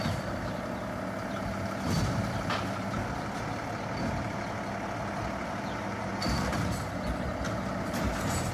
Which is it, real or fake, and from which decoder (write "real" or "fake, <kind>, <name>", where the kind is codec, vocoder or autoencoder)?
real